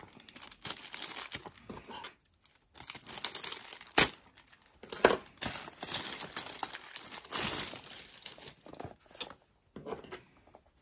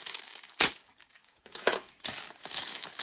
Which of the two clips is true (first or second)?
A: first